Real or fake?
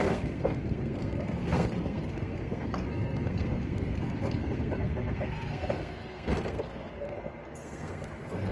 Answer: fake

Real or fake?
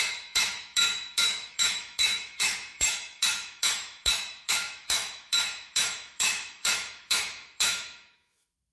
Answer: fake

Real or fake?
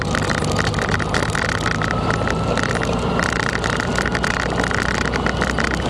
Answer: real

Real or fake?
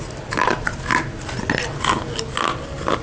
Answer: real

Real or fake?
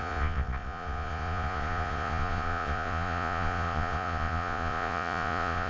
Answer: fake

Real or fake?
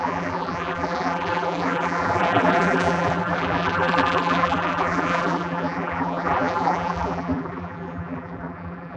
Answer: fake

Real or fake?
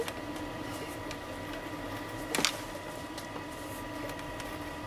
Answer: real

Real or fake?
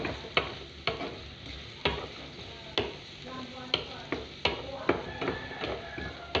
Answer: real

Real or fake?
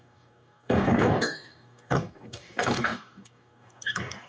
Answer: fake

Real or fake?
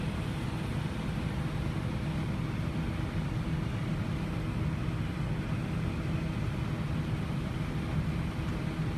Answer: real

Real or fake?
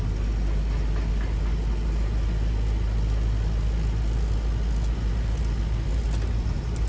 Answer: real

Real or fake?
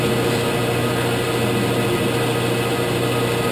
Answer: real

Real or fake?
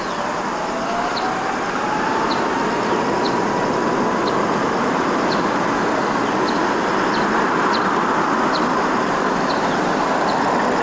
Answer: real